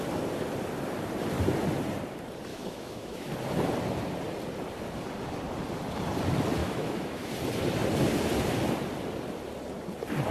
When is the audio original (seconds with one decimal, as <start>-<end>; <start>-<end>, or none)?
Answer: 0.0-2.5; 3.3-6.6; 7.3-10.3